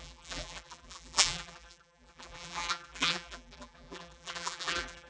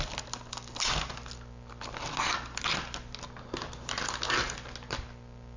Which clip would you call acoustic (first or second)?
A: second